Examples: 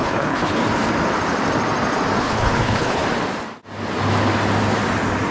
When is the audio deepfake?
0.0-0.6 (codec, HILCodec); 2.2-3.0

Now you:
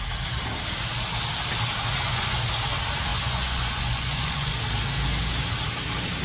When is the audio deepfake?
1.9-2.5 (vocoder, Vocos); 3.1-4.6

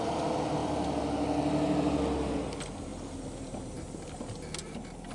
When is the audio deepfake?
none

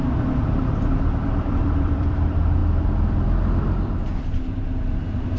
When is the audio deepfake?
0.5-5.4 (vocoder, BigVGAN v2)